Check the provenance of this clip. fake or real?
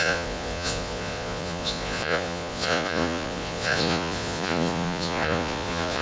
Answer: fake